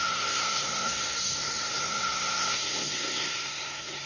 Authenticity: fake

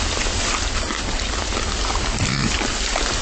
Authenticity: real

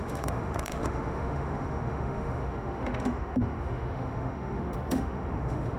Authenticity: fake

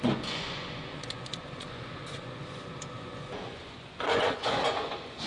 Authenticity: fake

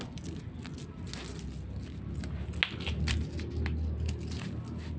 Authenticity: real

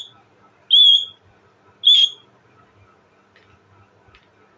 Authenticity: real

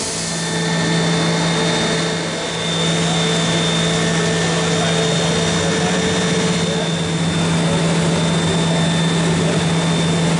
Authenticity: real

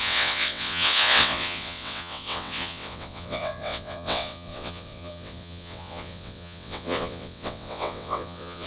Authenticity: fake